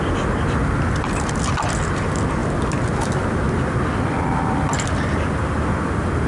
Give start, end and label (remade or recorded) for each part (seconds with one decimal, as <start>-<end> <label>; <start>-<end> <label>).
0.0-6.3 recorded